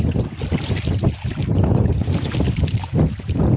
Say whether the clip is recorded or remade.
recorded